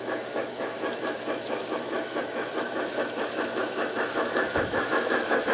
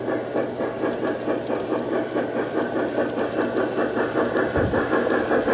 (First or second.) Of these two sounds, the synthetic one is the first